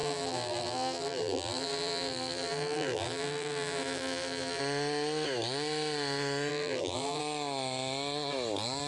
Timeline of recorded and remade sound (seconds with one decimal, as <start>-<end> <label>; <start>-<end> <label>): 0.0-4.6 remade; 4.6-6.5 recorded; 6.5-7.2 remade; 7.2-8.9 recorded